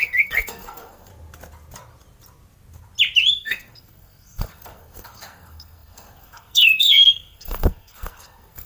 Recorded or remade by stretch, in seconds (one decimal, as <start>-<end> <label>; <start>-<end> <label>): 0.0-1.1 remade; 1.1-3.3 recorded; 3.3-8.7 remade